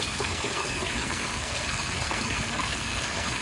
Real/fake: fake